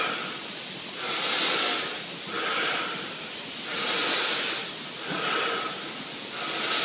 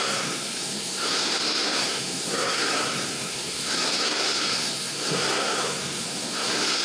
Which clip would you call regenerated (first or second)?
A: second